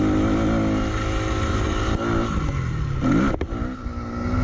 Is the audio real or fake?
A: real